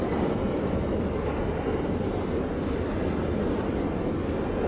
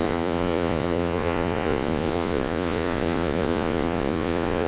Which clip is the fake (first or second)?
second